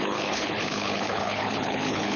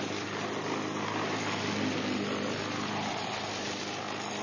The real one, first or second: second